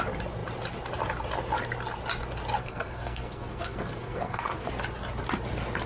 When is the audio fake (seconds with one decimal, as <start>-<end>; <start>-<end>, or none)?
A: 2.6-4.7